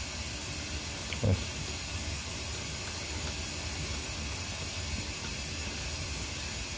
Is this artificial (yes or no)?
no